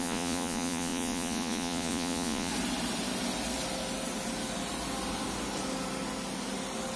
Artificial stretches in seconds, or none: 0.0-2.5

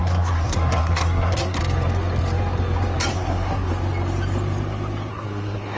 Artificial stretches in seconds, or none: 0.0-1.6; 3.1-3.7; 5.1-5.8